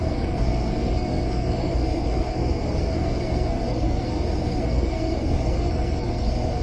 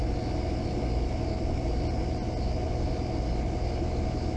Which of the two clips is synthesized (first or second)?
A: first